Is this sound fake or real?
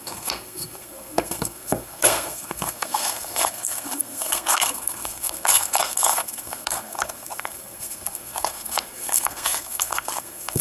fake